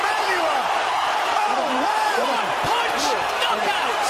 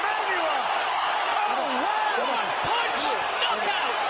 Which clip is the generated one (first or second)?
first